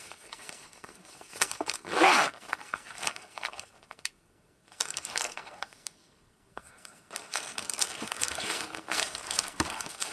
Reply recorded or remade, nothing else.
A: remade